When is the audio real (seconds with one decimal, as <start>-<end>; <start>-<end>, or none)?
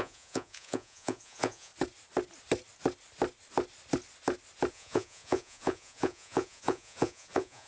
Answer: 1.7-4.7